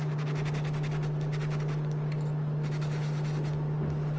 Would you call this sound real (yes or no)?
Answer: no